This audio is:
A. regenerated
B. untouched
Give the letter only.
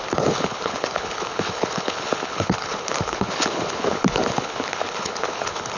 A